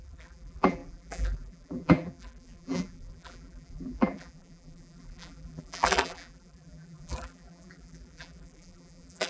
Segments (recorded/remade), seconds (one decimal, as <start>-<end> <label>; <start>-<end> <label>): 0.0-9.3 remade